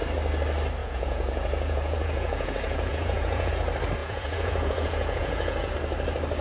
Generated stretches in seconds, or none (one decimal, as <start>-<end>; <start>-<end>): 0.8-3.5; 4.0-5.7